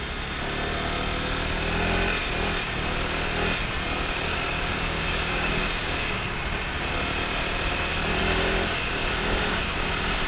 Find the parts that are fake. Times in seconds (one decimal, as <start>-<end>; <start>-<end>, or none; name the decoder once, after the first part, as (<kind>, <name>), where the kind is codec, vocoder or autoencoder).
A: 4.3-6.3 (codec, DAC); 8.2-9.7